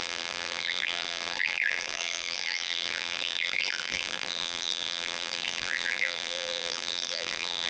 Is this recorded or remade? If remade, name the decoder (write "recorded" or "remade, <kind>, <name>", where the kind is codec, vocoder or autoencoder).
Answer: remade, vocoder, BigVGAN v2